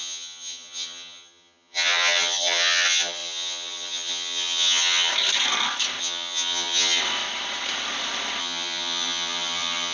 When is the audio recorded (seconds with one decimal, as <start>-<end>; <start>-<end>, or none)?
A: 5.1-6.0; 7.0-8.4